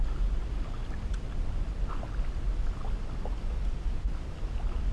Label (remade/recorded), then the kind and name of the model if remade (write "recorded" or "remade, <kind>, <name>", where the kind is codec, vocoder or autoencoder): recorded